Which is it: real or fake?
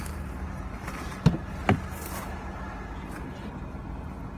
real